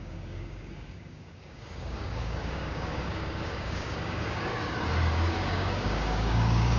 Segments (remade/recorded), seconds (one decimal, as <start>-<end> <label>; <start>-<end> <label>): 0.0-4.5 remade; 4.5-5.1 recorded; 5.1-6.8 remade

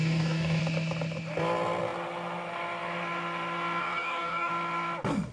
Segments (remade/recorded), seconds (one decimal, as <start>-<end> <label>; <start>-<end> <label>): 0.0-0.6 remade; 0.6-3.8 recorded; 3.8-4.5 remade; 4.5-5.3 recorded

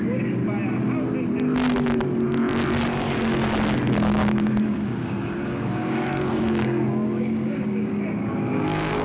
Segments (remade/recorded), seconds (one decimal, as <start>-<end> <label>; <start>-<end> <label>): 0.0-0.4 remade; 0.4-3.9 recorded; 3.9-9.0 remade

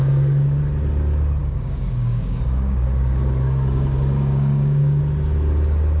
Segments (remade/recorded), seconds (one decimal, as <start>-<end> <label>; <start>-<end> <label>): 0.0-0.6 remade; 0.6-1.4 recorded; 1.4-5.0 remade; 5.0-6.0 recorded

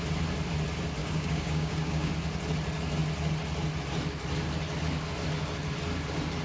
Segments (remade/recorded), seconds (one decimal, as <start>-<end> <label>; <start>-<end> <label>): 0.0-1.0 recorded; 1.0-2.1 remade; 2.1-6.4 recorded

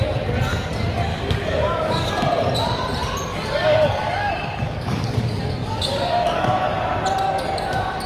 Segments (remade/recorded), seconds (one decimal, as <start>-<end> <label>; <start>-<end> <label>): 0.0-1.1 recorded; 1.1-2.1 remade; 2.1-3.3 recorded; 3.3-6.6 remade; 6.6-8.1 recorded